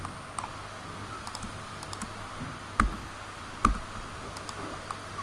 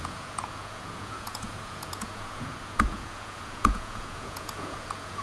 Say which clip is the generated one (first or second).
second